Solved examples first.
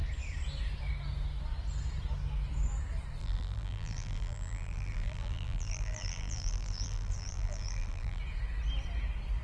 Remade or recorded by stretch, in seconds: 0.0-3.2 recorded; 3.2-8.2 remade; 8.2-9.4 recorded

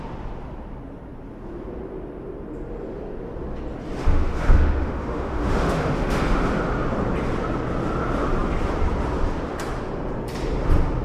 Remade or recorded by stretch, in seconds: 0.0-4.0 recorded; 4.0-6.2 remade; 6.2-11.0 recorded

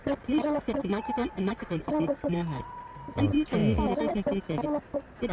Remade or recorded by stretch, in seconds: 0.0-3.2 remade; 3.2-5.3 recorded

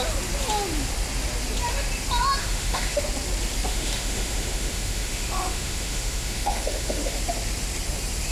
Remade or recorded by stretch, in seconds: 0.0-2.4 recorded; 2.4-3.0 remade; 3.0-3.7 recorded; 3.7-7.2 remade; 7.2-8.3 recorded

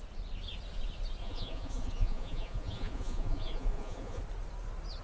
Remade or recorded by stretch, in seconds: 0.0-1.2 recorded; 1.2-4.2 remade; 4.2-5.0 recorded

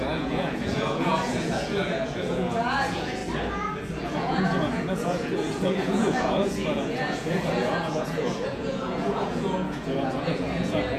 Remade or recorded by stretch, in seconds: 0.0-3.2 remade; 3.2-4.0 recorded; 4.0-11.0 remade